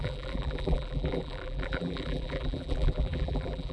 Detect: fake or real fake